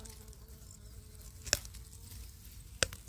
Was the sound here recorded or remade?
recorded